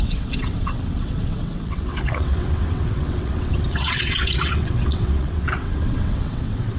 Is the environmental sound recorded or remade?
remade